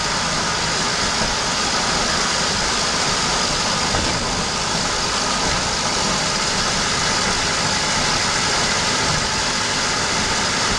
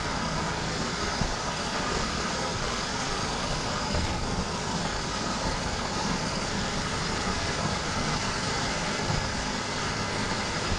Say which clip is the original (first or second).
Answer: first